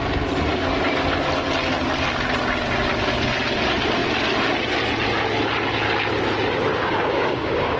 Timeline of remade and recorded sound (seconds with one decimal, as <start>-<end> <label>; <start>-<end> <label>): 0.0-6.7 recorded; 6.7-7.8 remade